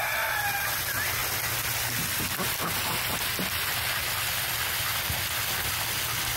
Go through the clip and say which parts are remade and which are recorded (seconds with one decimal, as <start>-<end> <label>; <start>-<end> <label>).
0.0-1.2 recorded; 1.2-4.0 remade; 4.0-6.4 recorded